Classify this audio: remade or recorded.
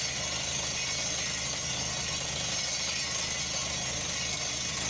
recorded